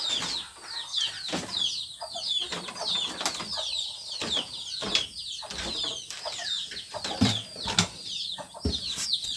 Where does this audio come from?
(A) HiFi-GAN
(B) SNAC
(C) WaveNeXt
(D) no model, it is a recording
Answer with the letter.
D